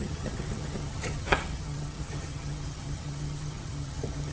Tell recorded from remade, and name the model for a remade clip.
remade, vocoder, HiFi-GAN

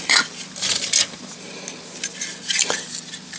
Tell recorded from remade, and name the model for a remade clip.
recorded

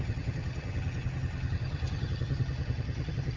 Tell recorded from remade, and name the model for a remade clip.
remade, vocoder, HiFi-GAN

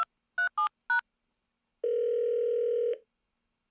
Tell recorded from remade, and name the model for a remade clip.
recorded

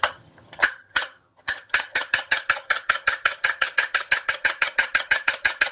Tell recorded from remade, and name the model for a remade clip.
remade, vocoder, HiFi-GAN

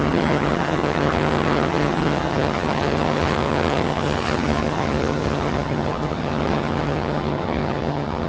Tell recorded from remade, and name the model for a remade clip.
remade, vocoder, HiFi-GAN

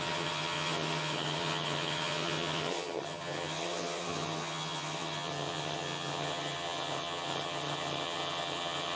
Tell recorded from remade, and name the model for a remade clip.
remade, vocoder, HiFi-GAN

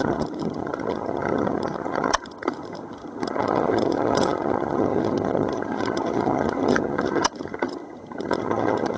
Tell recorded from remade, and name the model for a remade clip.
remade, vocoder, HiFi-GAN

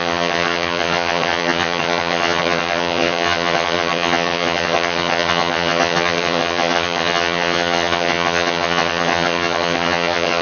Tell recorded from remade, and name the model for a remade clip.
remade, vocoder, HiFi-GAN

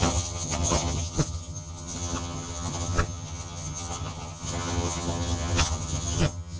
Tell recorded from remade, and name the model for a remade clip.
remade, vocoder, HiFi-GAN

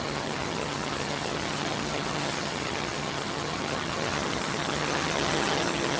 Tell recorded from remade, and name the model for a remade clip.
remade, vocoder, HiFi-GAN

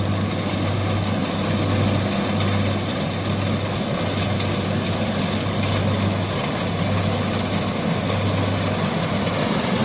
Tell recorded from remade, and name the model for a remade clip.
recorded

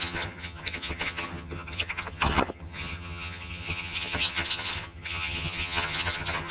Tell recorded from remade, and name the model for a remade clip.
remade, vocoder, HiFi-GAN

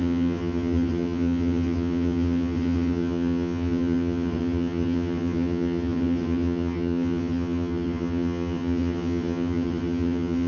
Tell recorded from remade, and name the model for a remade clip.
remade, vocoder, HiFi-GAN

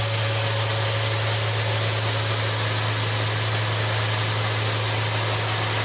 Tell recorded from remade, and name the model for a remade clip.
recorded